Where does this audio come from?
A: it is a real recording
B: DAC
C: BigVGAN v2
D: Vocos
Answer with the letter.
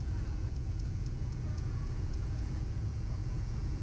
D